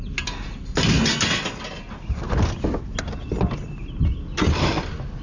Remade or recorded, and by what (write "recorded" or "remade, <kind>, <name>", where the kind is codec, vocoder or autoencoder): recorded